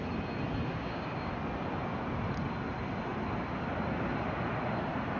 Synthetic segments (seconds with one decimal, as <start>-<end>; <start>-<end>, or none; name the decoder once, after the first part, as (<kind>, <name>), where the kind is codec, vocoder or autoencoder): 0.7-1.3 (codec, DAC)